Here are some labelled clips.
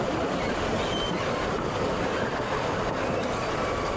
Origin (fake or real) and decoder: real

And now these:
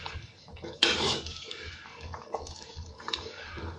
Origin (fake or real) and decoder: fake, codec, DAC